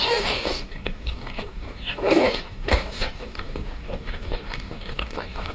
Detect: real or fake fake